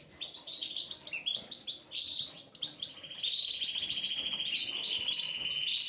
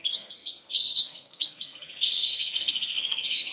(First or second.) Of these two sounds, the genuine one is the first